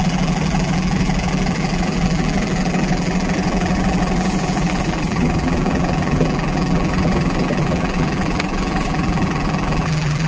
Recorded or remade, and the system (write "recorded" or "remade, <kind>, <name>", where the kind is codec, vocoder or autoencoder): remade, vocoder, BigVGAN v2